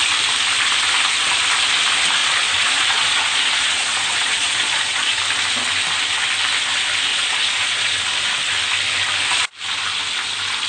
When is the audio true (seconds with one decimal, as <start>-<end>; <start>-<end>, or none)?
0.0-2.2; 5.2-7.1; 8.0-10.7